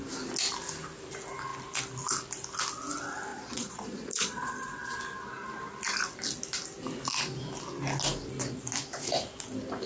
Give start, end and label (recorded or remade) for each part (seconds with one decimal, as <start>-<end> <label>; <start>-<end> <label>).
0.0-3.3 recorded; 3.3-4.9 remade; 4.9-9.9 recorded